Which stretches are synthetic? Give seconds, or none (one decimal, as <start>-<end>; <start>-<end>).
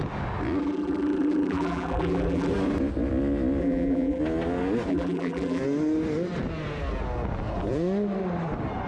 0.6-2.5; 3.6-4.2; 4.9-5.6